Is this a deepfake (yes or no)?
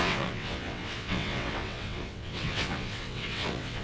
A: yes